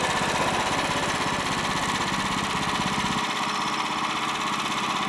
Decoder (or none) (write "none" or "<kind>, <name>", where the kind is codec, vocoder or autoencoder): none